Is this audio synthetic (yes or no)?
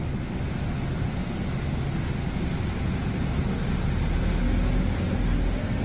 no